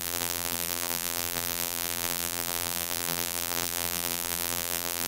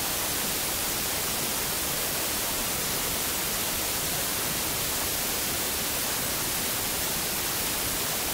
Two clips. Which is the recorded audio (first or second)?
second